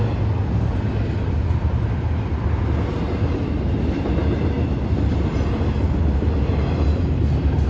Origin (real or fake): real